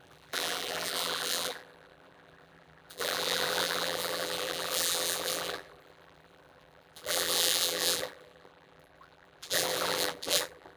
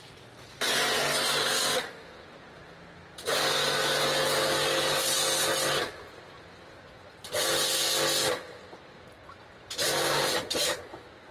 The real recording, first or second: second